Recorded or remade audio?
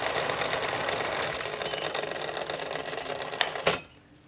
recorded